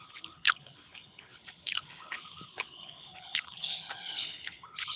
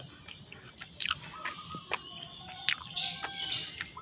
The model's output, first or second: first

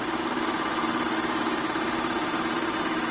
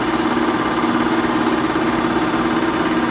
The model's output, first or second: first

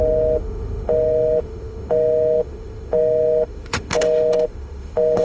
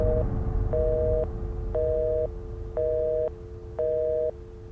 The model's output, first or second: first